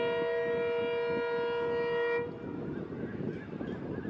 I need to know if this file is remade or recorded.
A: recorded